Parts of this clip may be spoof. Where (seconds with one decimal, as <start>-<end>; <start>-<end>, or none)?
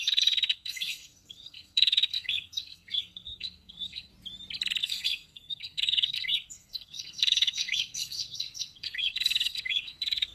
0.0-4.1; 4.8-10.3